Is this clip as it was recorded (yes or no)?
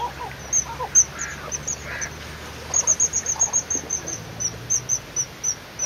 yes